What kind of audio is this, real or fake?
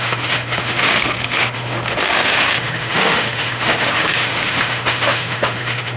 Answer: fake